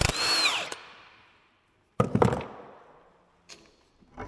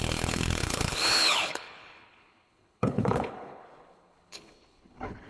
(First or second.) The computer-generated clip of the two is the second